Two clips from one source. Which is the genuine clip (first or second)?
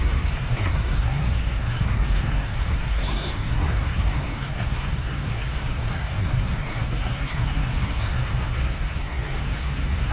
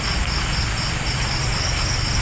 second